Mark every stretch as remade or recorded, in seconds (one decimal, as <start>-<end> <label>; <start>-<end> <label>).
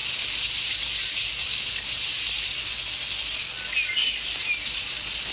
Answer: 0.0-2.8 remade; 2.8-4.0 recorded; 4.0-4.8 remade; 4.8-5.3 recorded